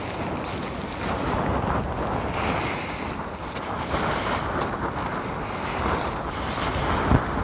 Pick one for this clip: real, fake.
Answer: real